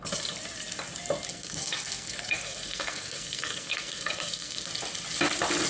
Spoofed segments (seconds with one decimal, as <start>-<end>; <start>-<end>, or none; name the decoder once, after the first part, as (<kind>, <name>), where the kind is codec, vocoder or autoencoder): 1.3-4.7 (codec, SNAC)

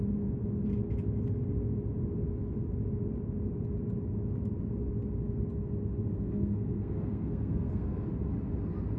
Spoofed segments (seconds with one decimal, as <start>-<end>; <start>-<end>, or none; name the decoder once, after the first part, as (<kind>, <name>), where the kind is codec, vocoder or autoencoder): 6.1-8.1 (codec, SNAC)

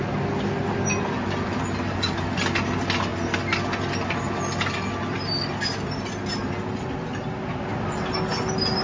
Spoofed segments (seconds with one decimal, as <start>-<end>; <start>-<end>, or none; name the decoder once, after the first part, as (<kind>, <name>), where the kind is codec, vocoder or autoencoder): none

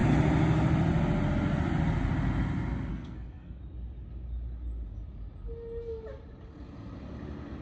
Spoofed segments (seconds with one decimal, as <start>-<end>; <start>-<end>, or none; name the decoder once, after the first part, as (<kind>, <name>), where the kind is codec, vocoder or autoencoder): 2.9-3.6 (codec, SNAC)

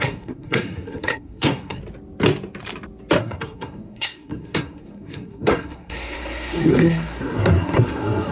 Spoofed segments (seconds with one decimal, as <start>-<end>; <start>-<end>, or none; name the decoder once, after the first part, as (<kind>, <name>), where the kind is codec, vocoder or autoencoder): 0.0-1.8 (codec, SNAC); 3.2-8.3